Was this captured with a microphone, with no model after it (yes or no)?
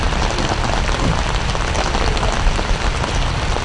yes